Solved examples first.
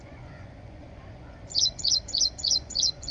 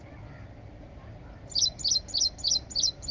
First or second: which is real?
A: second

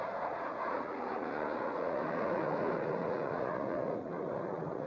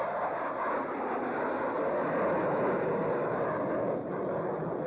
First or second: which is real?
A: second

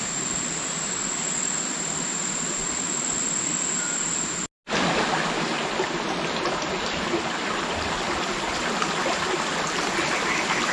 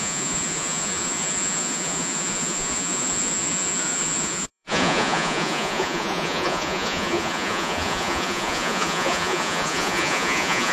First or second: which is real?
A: first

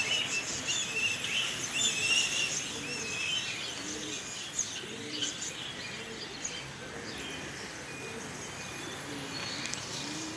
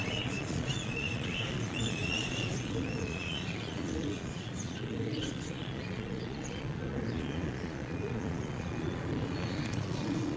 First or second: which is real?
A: first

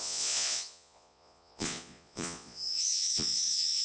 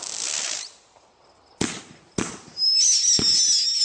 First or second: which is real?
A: second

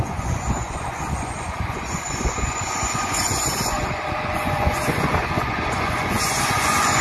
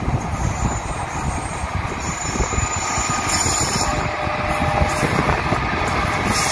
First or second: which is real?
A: second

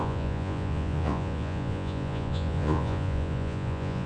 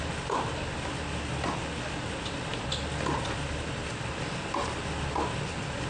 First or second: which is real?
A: second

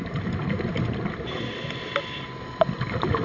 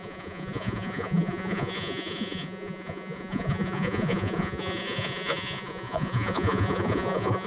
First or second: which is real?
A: first